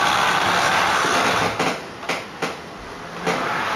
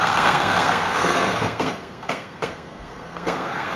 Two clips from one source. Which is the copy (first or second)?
second